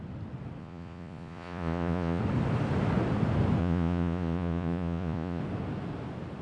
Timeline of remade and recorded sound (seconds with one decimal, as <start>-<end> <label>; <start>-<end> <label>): 0.0-0.6 recorded; 0.6-2.2 remade; 2.2-3.6 recorded; 3.6-5.4 remade; 5.4-6.4 recorded